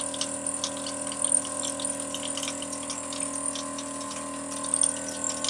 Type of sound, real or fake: real